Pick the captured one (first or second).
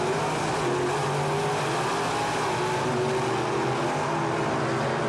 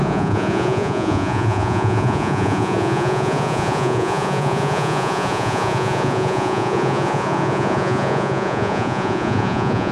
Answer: first